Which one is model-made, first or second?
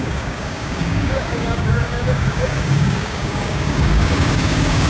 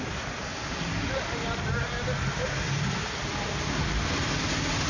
first